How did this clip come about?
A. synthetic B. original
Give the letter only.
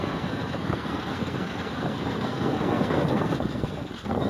A